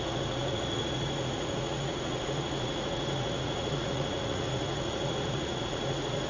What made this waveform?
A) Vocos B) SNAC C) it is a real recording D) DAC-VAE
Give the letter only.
A